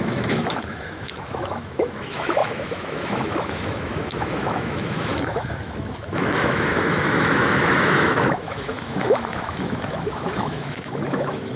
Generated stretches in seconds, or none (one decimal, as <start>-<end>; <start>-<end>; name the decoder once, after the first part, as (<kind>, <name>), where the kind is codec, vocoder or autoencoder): 0.0-11.6 (autoencoder, DAC-VAE)